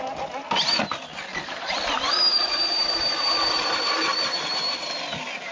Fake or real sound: real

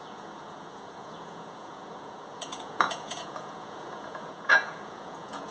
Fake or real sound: fake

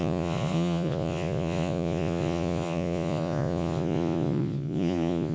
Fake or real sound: fake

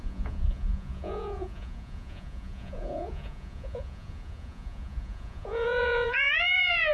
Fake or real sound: fake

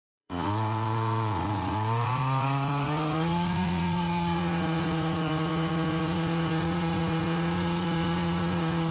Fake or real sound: fake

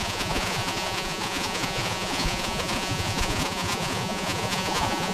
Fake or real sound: fake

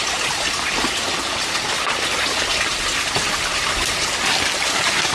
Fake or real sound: real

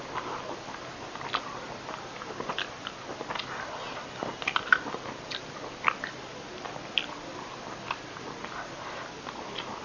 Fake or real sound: real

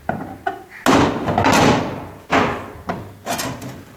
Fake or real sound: real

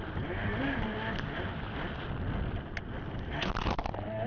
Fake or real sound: real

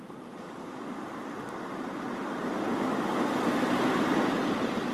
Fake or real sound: real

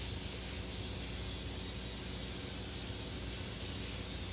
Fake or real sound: real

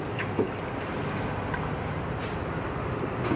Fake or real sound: real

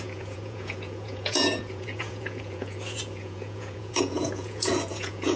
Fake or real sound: fake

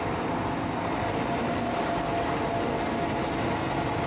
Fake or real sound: real